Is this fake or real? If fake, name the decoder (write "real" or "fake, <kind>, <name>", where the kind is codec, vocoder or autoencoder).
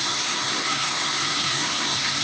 fake, codec, SNAC